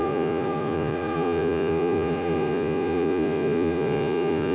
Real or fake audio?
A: fake